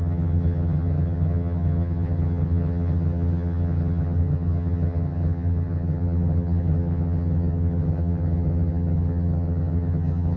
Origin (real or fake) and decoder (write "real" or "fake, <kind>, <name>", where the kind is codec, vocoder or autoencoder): fake, vocoder, HiFi-GAN